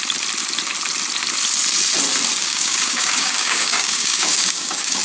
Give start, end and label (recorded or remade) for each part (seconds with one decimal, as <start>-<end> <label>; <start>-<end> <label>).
0.0-2.4 recorded; 2.4-5.0 remade